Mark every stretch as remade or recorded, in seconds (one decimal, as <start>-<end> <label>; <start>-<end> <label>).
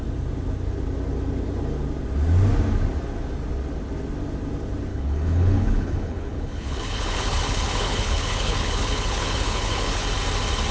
0.0-4.9 recorded; 4.9-10.1 remade; 10.1-10.7 recorded